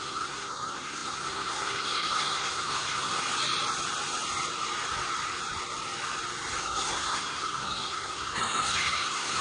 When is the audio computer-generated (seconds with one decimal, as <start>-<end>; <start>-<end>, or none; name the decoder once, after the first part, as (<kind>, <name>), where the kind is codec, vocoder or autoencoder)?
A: 0.0-3.2 (codec, SNAC); 6.6-9.4